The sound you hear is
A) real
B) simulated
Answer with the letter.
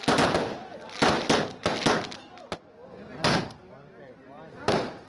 A